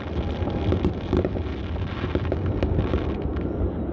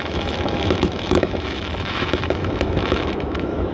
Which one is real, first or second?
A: first